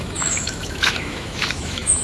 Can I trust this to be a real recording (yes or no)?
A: no